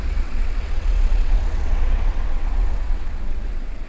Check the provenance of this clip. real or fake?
fake